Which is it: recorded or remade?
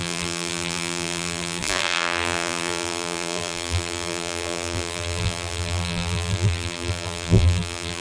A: remade